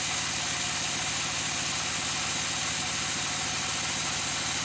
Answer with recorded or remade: recorded